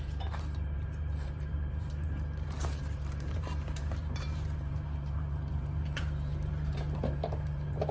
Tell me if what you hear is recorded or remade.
remade